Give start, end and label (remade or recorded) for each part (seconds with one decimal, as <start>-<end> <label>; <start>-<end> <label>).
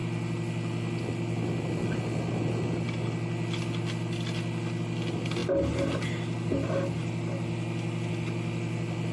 0.0-9.1 recorded